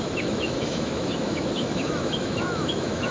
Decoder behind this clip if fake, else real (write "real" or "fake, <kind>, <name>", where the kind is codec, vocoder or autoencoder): fake, autoencoder, DAC-VAE